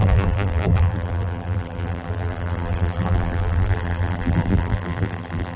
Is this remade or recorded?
remade